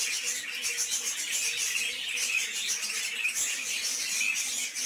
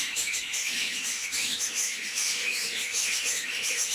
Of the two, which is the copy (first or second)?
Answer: second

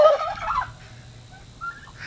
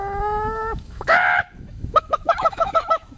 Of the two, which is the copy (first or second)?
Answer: second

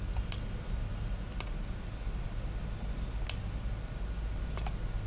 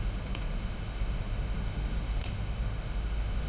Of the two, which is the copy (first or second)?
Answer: second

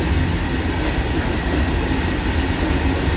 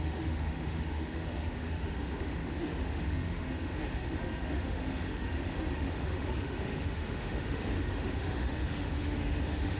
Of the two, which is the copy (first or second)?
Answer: second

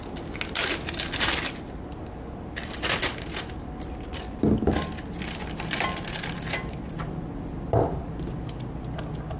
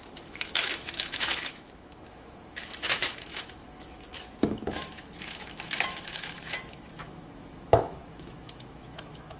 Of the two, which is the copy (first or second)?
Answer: second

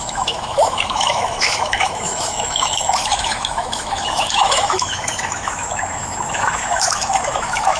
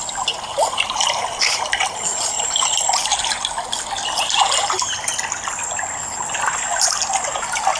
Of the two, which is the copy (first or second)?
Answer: first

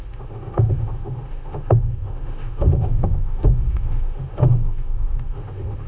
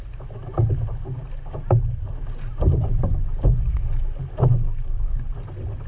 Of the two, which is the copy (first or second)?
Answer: first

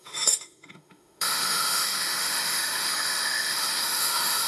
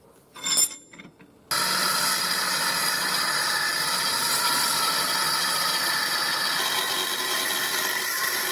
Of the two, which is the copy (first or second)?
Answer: first